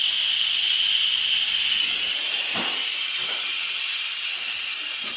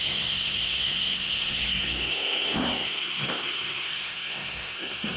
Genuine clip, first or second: first